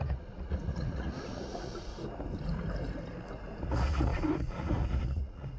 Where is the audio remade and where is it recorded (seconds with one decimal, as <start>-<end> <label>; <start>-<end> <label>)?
0.0-1.9 remade; 1.9-3.6 recorded; 3.6-5.6 remade